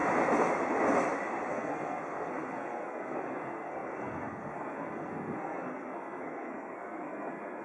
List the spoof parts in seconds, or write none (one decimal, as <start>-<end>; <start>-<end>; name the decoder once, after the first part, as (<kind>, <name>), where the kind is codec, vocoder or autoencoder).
1.5-7.6 (codec, SNAC)